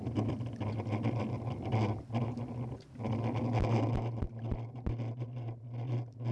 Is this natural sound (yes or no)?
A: yes